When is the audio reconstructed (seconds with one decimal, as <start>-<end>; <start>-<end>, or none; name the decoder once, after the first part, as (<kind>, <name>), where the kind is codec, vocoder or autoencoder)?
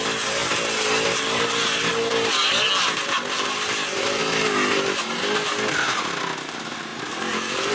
none